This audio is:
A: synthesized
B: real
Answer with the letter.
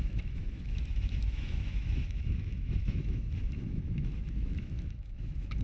A